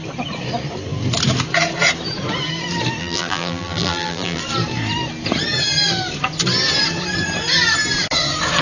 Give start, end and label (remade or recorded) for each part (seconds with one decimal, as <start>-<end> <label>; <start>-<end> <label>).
0.0-3.0 recorded; 3.0-4.4 remade; 4.4-8.6 recorded

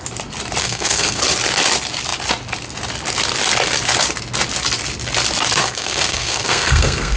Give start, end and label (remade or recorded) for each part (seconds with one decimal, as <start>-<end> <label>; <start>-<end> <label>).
0.0-0.6 recorded; 0.6-1.2 remade; 1.2-5.6 recorded; 5.6-7.2 remade